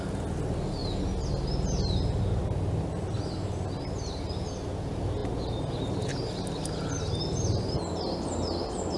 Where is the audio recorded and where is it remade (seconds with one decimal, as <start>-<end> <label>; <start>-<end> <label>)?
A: 0.0-9.0 recorded